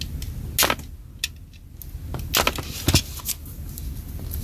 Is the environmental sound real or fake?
real